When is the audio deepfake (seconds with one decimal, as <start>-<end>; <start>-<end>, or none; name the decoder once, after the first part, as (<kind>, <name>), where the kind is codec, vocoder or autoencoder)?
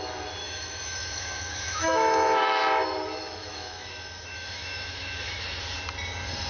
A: 0.4-2.6 (autoencoder, DAC-VAE); 3.4-5.6